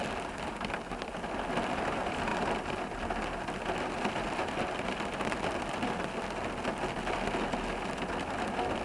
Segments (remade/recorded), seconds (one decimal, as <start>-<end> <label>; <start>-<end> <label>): 0.0-8.8 recorded

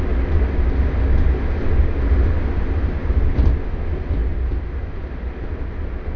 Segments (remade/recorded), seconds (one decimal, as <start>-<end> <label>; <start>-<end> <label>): 0.0-6.2 recorded

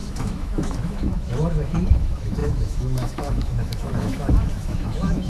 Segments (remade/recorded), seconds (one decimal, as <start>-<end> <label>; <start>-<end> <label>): 0.0-5.3 remade

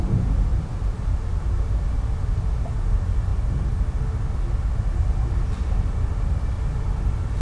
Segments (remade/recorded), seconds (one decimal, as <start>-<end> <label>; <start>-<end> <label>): 0.0-0.5 recorded; 0.5-1.5 remade; 1.5-7.4 recorded

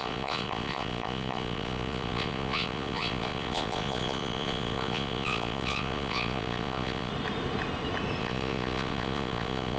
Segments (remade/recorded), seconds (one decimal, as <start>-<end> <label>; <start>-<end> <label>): 0.0-7.1 remade; 7.1-8.2 recorded; 8.2-9.8 remade

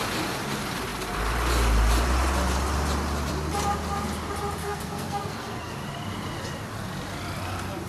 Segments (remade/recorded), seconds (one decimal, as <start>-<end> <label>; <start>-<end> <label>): 0.0-4.6 recorded; 4.6-5.7 remade; 5.7-7.9 recorded

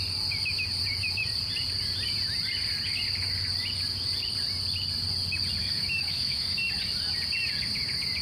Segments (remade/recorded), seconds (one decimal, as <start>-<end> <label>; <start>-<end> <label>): 0.0-5.6 recorded; 5.6-6.6 remade; 6.6-8.2 recorded